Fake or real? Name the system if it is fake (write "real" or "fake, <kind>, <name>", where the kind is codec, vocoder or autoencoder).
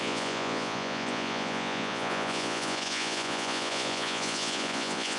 fake, vocoder, Vocos